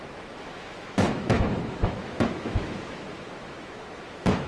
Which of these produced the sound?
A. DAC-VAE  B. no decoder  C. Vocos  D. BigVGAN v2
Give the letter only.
A